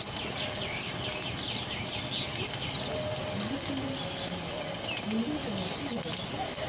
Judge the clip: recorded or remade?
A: recorded